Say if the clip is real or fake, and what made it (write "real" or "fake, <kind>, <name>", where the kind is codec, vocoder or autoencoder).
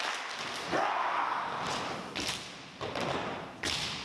real